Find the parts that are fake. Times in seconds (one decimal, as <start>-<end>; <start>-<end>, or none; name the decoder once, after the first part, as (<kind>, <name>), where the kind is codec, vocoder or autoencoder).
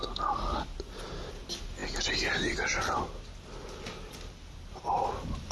none